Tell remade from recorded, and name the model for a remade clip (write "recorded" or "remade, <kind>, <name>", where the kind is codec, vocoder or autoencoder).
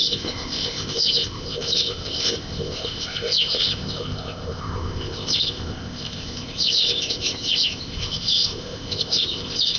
remade, codec, ZipCodec